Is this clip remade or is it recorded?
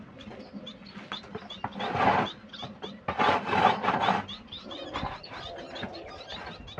recorded